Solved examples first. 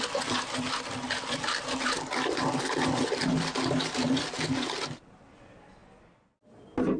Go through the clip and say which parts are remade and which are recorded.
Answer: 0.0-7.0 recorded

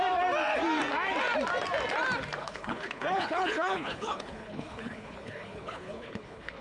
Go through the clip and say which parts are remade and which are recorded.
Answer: 0.0-2.4 recorded; 2.4-6.6 remade